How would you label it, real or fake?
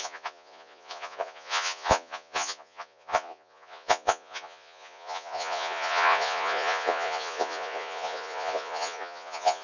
fake